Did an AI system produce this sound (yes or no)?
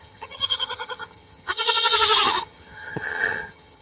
yes